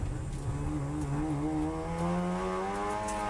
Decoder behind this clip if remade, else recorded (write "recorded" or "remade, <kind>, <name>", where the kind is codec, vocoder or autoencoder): recorded